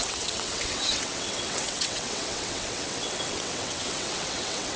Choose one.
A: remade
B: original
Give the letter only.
A